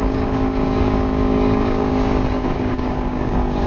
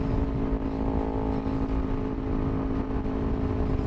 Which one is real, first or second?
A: second